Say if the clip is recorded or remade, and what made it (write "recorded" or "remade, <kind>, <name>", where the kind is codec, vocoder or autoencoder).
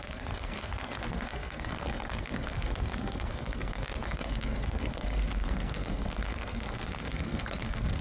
remade, codec, SNAC